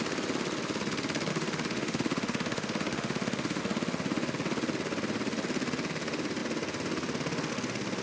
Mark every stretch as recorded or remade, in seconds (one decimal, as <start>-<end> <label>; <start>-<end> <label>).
0.0-1.3 recorded; 1.3-3.6 remade; 3.6-8.0 recorded